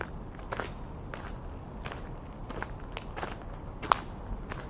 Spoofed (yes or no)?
no